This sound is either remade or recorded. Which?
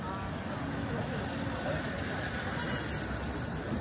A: recorded